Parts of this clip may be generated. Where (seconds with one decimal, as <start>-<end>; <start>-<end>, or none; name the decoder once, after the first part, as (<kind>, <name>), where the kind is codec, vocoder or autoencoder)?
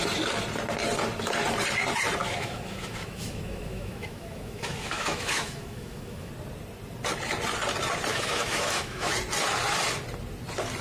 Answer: 2.2-6.3 (autoencoder, DAC-VAE); 8.1-9.1